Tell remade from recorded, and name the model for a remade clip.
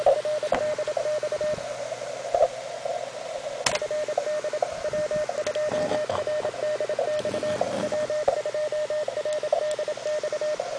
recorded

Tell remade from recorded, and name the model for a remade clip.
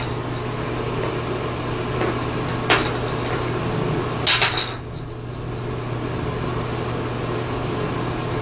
recorded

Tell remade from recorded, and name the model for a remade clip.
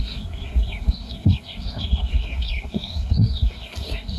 remade, codec, SNAC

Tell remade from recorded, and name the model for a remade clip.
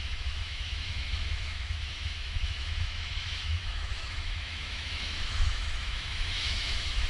remade, autoencoder, DAC-VAE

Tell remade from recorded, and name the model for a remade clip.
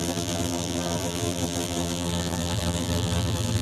remade, vocoder, BigVGAN v2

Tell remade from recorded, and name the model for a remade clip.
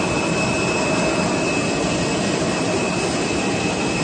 recorded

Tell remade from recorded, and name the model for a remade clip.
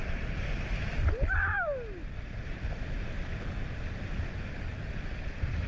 recorded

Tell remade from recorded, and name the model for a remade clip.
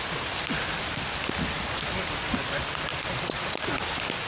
recorded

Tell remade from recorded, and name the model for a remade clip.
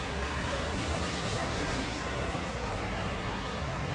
remade, codec, SNAC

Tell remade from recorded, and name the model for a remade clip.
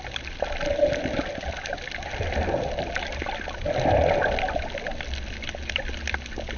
recorded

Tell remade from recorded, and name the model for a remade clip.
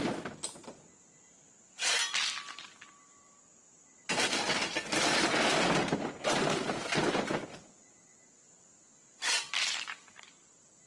recorded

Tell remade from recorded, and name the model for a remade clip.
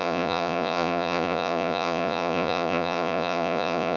remade, vocoder, Vocos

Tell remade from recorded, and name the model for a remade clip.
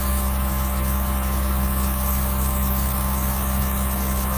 remade, codec, DAC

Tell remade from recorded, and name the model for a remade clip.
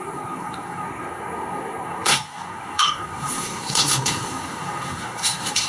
remade, codec, SNAC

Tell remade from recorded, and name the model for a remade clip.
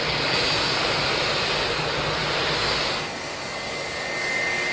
recorded